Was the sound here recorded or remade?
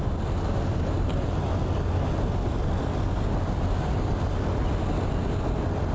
recorded